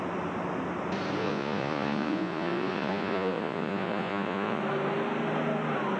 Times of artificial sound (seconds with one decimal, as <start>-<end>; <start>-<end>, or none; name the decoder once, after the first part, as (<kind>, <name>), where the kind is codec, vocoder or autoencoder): 1.2-4.6 (vocoder, Vocos)